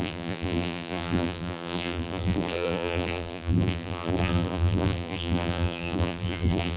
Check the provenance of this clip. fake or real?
fake